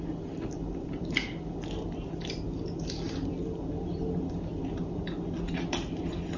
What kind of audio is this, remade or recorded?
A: recorded